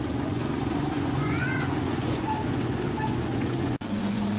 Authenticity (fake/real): fake